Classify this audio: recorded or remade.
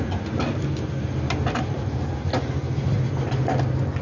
recorded